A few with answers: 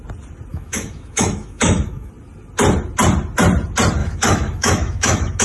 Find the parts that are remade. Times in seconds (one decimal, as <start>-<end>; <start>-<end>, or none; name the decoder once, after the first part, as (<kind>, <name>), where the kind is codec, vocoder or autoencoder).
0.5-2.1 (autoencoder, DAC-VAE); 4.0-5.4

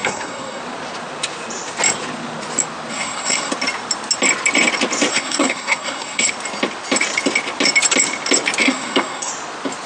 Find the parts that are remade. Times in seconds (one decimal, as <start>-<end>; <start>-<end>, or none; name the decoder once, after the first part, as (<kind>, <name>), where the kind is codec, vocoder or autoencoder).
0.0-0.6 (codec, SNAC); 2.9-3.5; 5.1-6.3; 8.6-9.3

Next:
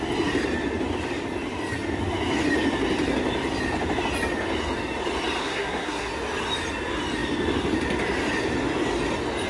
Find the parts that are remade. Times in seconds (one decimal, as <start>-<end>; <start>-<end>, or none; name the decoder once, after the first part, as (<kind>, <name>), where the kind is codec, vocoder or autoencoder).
5.4-6.1 (codec, SNAC)

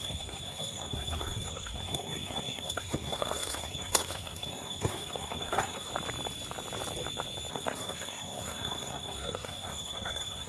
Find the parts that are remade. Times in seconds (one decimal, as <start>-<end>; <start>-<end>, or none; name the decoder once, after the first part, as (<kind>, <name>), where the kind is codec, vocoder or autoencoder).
0.0-5.9 (codec, SNAC); 7.5-10.5